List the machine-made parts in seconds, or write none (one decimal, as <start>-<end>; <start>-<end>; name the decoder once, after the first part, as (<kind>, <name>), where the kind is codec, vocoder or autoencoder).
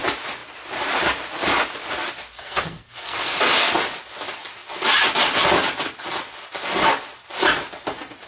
2.3-3.4 (codec, SNAC)